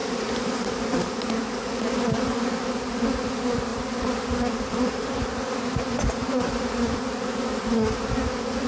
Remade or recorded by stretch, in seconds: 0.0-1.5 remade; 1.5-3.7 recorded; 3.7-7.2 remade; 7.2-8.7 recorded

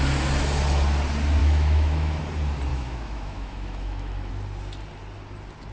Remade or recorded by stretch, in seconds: 0.0-1.4 recorded; 1.4-2.2 remade; 2.2-2.7 recorded; 2.7-4.3 remade; 4.3-5.7 recorded

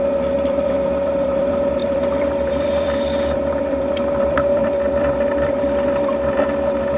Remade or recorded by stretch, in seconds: 0.0-7.0 remade

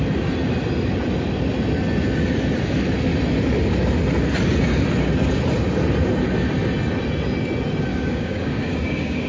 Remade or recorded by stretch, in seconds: 0.0-7.9 recorded; 7.9-9.3 remade

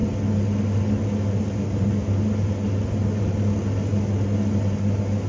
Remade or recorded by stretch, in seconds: 0.0-5.3 recorded

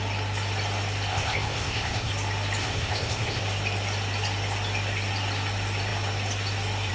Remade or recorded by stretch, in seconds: 0.0-1.1 recorded; 1.1-2.1 remade; 2.1-2.6 recorded; 2.6-3.4 remade; 3.4-6.9 recorded